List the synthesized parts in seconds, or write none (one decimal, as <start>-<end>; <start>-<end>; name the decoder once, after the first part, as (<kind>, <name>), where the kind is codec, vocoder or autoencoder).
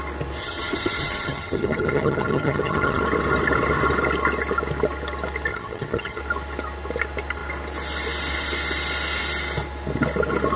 0.4-3.0 (vocoder, HiFi-GAN); 5.5-6.2